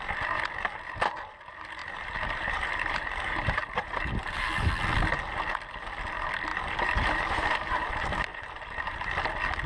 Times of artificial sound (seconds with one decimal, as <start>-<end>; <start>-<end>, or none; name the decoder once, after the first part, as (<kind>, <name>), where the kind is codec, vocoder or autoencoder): 1.8-4.7 (vocoder, BigVGAN v2); 6.5-7.9; 8.3-9.1